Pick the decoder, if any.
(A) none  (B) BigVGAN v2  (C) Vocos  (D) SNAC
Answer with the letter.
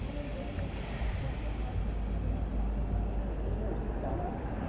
A